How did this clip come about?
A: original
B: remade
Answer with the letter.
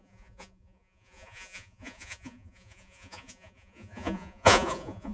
B